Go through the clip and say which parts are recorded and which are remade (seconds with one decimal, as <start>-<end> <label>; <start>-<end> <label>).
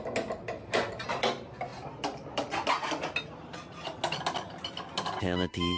0.0-5.8 recorded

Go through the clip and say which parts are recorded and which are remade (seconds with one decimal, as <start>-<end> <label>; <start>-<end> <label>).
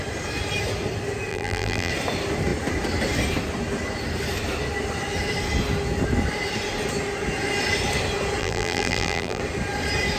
0.0-1.3 recorded; 1.3-1.9 remade; 1.9-8.4 recorded; 8.4-9.4 remade; 9.4-10.2 recorded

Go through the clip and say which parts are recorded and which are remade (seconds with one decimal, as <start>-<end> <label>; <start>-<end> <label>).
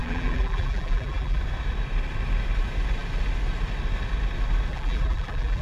0.0-1.4 remade; 1.4-4.7 recorded; 4.7-5.6 remade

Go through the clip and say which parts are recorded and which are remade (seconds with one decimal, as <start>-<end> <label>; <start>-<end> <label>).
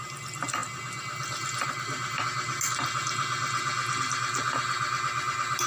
0.0-5.7 recorded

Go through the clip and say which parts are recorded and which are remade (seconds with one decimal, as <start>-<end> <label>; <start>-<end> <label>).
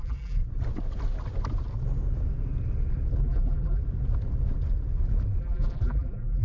0.0-0.4 remade; 0.4-3.2 recorded; 3.2-3.8 remade; 3.8-5.4 recorded; 5.4-6.4 remade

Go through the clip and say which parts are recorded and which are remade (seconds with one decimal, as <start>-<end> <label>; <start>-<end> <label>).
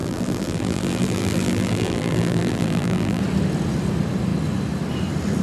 0.0-3.2 remade; 3.2-5.4 recorded